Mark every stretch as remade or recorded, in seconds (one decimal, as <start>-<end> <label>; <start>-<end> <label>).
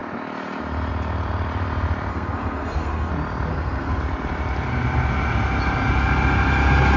0.0-2.1 recorded; 2.1-3.1 remade; 3.1-3.5 recorded; 3.5-4.0 remade; 4.0-7.0 recorded